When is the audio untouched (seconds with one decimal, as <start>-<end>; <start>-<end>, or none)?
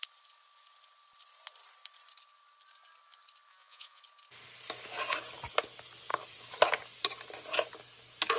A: 0.0-3.5; 4.0-8.4